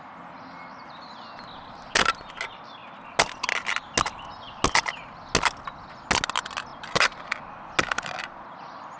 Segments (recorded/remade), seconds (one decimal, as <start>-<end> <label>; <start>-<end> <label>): 0.0-9.0 recorded